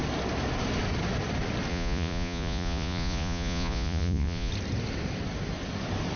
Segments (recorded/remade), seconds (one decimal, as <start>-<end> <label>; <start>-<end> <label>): 0.0-1.7 recorded; 1.7-4.5 remade; 4.5-6.2 recorded